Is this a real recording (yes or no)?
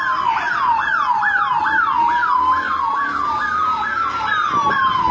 yes